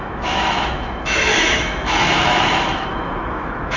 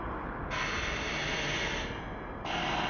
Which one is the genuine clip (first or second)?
second